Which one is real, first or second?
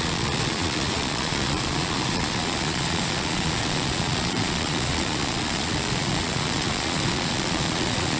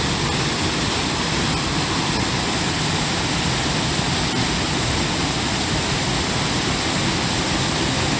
second